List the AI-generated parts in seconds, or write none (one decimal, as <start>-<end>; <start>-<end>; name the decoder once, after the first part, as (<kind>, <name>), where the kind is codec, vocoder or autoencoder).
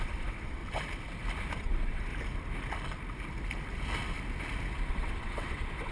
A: 0.0-0.6 (vocoder, WaveNeXt); 1.6-2.1; 4.9-5.9